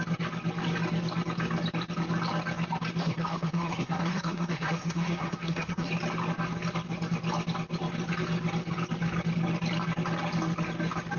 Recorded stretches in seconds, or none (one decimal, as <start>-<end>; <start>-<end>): 0.0-3.0; 5.9-11.2